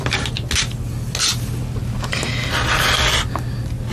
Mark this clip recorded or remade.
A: recorded